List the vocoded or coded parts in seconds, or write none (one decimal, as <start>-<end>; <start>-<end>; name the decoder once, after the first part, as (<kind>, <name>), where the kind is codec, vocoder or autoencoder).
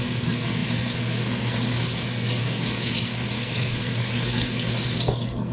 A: 0.0-5.5 (codec, SNAC)